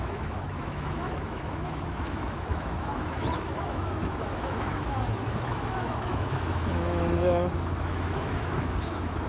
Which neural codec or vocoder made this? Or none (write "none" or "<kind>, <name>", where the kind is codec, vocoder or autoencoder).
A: autoencoder, DAC-VAE